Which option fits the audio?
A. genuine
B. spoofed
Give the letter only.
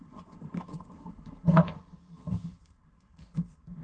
B